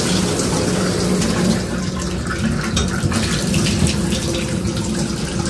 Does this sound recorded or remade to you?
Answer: recorded